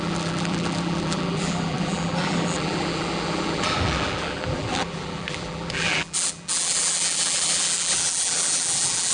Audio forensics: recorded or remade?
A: remade